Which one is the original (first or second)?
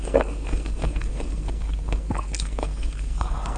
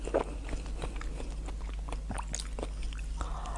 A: second